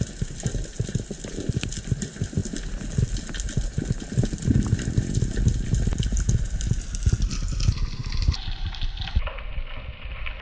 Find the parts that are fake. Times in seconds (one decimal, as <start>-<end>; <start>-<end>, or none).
none

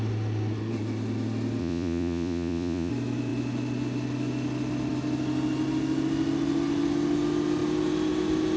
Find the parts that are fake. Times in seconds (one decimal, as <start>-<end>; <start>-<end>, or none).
1.6-2.9